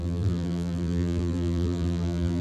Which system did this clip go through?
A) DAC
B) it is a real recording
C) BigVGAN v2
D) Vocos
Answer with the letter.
C